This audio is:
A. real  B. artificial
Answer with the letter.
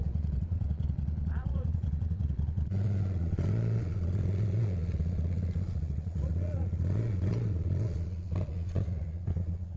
B